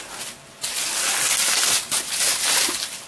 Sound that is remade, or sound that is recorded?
recorded